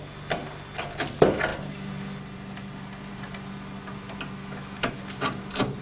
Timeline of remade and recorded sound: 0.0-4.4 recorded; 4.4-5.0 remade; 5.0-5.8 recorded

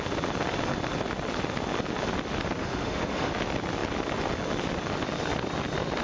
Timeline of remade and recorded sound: 0.0-2.6 recorded; 2.6-3.3 remade; 3.3-6.0 recorded

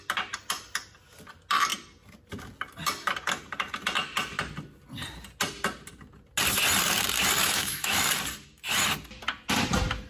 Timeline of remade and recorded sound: 0.0-7.4 recorded; 7.4-8.0 remade; 8.0-10.1 recorded